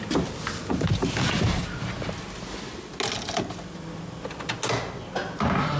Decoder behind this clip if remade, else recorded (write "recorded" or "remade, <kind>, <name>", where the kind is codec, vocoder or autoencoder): recorded